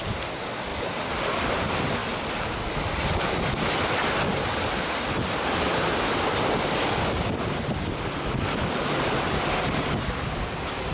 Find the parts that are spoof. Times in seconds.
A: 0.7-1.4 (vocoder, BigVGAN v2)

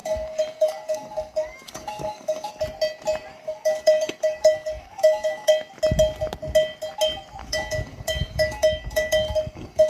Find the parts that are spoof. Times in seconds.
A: 0.0-2.5 (codec, DAC); 3.3-5.5; 7.4-9.9

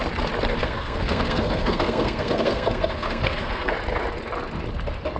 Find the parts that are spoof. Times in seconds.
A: 0.6-3.7 (codec, SNAC)

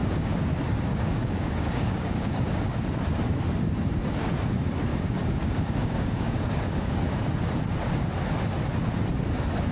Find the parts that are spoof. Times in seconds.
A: 0.0-0.5 (codec, DAC); 0.9-2.8; 4.9-7.0